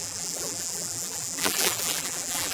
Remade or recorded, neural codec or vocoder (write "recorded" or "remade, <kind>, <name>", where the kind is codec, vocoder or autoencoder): remade, vocoder, BigVGAN v2